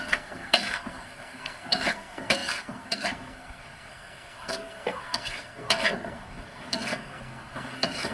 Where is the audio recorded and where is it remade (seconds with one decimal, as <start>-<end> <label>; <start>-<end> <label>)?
0.0-8.1 remade